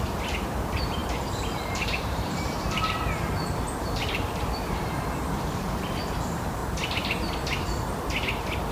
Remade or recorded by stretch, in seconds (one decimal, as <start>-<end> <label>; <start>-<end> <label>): 0.0-6.6 remade; 6.6-8.7 recorded